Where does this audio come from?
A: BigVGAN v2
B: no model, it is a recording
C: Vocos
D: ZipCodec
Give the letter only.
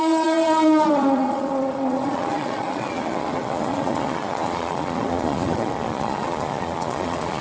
C